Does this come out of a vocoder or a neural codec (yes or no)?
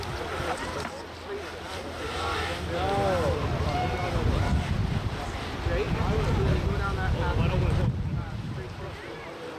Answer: no